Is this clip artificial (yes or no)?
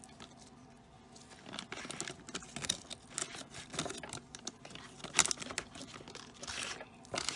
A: no